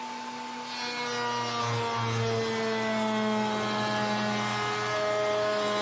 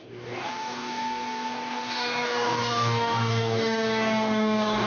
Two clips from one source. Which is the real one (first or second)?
first